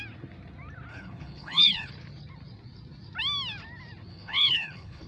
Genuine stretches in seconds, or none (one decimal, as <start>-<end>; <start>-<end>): 0.0-0.9; 1.9-4.1